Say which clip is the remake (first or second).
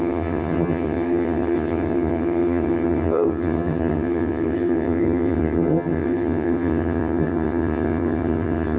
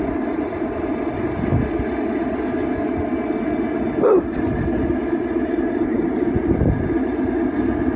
first